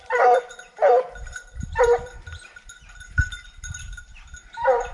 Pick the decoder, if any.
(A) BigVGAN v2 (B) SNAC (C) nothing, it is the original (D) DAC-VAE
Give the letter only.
A